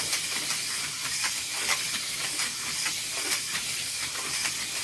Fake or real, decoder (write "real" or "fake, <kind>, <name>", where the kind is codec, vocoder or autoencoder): real